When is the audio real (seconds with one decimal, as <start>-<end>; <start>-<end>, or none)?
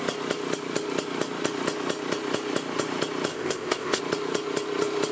0.0-3.3; 4.0-5.1